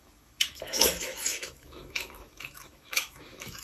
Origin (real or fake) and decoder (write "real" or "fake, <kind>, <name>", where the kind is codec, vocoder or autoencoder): fake, autoencoder, DAC-VAE